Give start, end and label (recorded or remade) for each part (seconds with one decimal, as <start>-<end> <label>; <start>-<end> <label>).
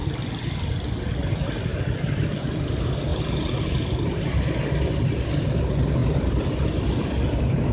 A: 0.0-1.0 remade; 1.0-1.7 recorded; 1.7-2.4 remade; 2.4-3.1 recorded; 3.1-4.2 remade; 4.2-6.0 recorded; 6.0-7.7 remade